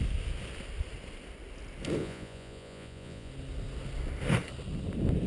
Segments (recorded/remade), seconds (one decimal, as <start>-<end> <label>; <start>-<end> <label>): 0.0-2.0 recorded; 2.0-3.3 remade; 3.3-5.3 recorded